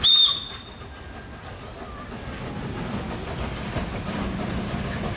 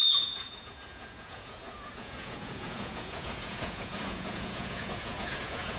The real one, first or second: first